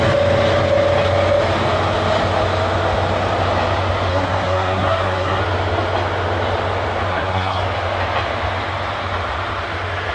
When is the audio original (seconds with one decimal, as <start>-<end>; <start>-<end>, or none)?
0.0-4.1; 5.4-7.1; 7.6-10.1